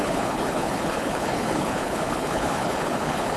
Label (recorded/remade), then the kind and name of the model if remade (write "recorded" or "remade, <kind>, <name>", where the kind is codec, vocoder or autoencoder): remade, codec, HILCodec